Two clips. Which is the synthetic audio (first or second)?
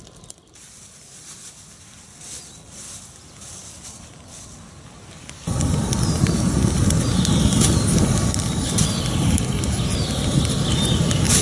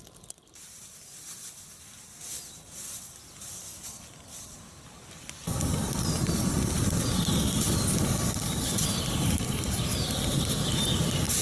second